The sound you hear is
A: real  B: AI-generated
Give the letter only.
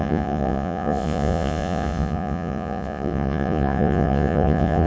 B